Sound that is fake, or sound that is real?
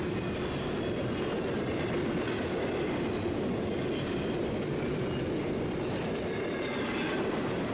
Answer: real